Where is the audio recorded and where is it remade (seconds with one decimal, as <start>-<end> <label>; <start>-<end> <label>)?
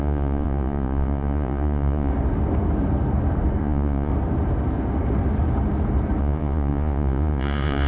0.0-2.1 remade; 2.1-3.6 recorded; 3.6-4.1 remade; 4.1-6.2 recorded; 6.2-7.9 remade